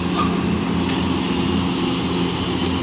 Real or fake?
real